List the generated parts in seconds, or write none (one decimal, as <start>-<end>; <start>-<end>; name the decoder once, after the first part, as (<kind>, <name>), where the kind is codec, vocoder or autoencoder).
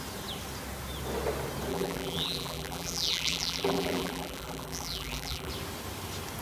1.7-5.5 (vocoder, BigVGAN v2)